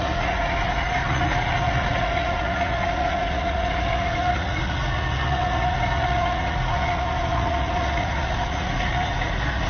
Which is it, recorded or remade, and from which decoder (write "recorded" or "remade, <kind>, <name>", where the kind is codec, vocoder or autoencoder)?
remade, vocoder, Vocos